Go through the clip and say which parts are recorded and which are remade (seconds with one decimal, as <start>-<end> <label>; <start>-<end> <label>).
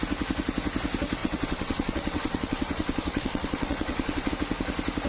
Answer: 0.0-1.2 recorded; 1.2-4.3 remade; 4.3-5.1 recorded